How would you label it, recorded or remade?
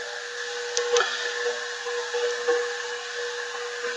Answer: recorded